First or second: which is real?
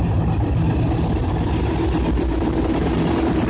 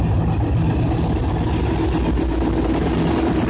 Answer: second